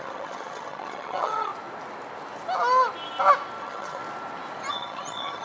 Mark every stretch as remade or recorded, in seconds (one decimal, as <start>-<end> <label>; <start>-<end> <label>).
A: 0.0-1.5 remade; 1.5-3.6 recorded; 3.6-4.0 remade; 4.0-4.7 recorded; 4.7-5.4 remade